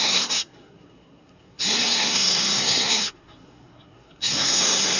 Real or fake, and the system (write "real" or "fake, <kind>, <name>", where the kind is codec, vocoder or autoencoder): fake, codec, SNAC